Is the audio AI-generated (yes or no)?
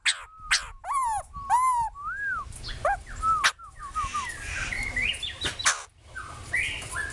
no